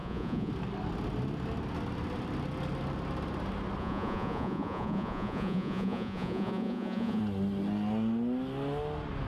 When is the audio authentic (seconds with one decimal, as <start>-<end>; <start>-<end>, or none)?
0.5-3.8; 7.2-9.3